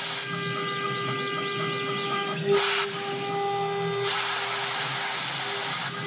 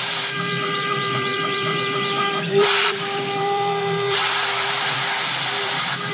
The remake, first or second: second